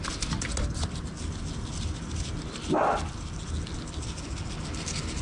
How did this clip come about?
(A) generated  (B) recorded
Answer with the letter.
B